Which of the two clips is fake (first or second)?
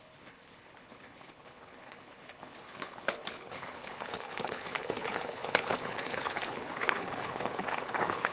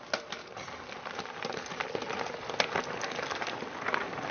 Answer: first